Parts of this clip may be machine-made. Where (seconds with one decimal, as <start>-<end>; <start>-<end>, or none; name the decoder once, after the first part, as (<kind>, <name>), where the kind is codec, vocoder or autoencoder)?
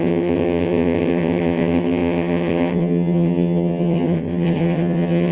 0.0-5.3 (vocoder, HiFi-GAN)